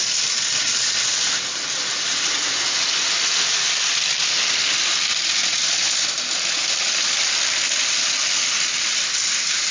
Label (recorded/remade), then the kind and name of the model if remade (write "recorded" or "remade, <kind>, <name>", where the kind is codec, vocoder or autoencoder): recorded